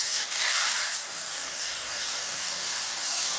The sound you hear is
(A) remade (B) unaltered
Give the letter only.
A